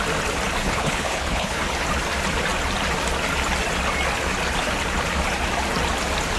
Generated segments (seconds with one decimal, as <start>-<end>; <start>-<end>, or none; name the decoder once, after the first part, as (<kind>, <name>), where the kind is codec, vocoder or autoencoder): 0.6-1.6 (codec, HILCodec)